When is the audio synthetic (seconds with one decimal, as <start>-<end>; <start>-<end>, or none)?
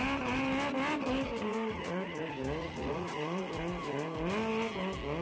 1.5-2.2; 2.6-3.4